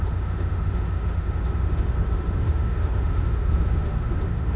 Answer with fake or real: fake